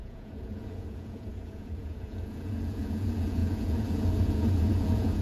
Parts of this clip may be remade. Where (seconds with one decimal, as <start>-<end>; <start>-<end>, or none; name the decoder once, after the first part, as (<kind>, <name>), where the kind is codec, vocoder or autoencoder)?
0.0-5.2 (vocoder, Vocos)